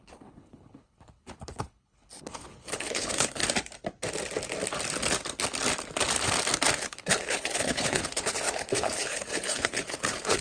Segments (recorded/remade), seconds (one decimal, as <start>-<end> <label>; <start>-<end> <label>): 0.0-3.4 remade; 3.4-6.8 recorded; 6.8-10.4 remade